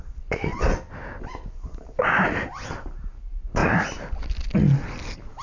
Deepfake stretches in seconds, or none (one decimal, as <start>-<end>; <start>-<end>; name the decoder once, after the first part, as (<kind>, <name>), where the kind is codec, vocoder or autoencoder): none